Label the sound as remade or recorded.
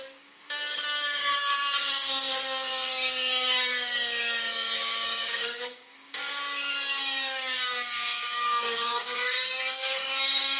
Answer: remade